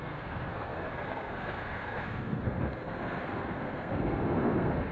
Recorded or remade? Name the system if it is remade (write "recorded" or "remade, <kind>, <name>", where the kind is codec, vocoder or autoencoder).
remade, codec, SNAC